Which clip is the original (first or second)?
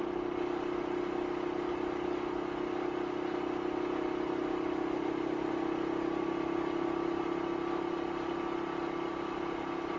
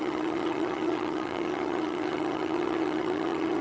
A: first